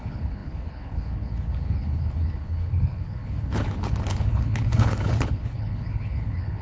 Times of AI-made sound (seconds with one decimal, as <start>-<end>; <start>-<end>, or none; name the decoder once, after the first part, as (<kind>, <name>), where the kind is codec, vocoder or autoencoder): 0.0-6.6 (codec, HILCodec)